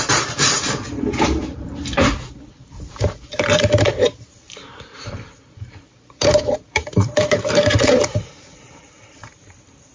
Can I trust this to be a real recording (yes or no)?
no